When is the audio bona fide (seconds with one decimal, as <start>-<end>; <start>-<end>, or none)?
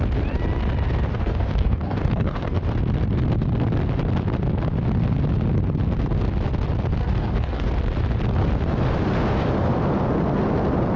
0.0-1.1; 2.6-7.0; 7.7-11.0